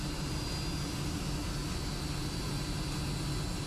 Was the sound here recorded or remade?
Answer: recorded